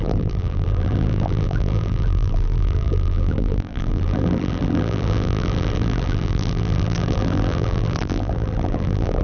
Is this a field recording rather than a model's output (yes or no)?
no